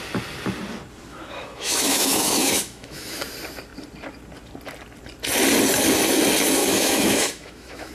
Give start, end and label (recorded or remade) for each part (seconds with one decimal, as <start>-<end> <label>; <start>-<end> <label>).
0.0-1.1 recorded; 1.1-3.2 remade; 3.2-6.6 recorded; 6.6-7.9 remade